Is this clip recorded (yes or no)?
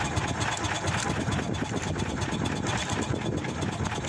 yes